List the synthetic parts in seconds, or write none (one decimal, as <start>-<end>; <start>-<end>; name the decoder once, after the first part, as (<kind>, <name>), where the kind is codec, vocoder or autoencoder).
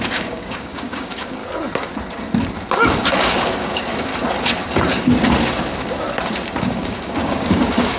0.0-1.4 (codec, DAC); 3.0-4.1; 6.6-8.0